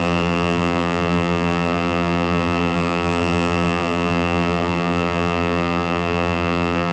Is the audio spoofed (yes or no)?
yes